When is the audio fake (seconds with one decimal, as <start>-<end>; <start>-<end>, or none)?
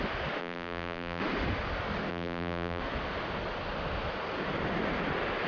0.4-1.2; 2.1-2.8